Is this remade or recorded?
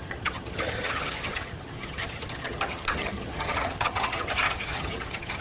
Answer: remade